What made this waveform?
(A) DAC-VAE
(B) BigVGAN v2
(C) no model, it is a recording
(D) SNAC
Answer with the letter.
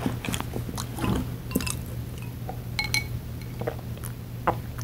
C